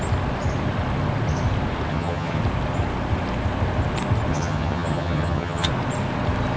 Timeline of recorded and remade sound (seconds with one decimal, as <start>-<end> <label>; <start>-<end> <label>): 0.0-1.9 recorded; 1.9-2.4 remade; 2.4-4.3 recorded; 4.3-5.7 remade; 5.7-6.6 recorded